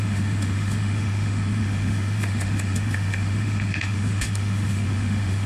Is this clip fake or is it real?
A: fake